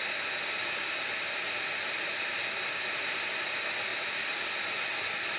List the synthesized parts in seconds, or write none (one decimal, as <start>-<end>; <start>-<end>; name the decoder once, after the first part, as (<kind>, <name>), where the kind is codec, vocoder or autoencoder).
none